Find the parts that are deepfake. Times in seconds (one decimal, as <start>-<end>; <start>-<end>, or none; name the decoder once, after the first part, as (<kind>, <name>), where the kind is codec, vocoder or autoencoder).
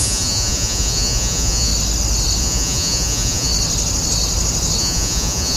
0.0-1.7 (vocoder, Vocos); 2.4-3.5; 4.8-5.6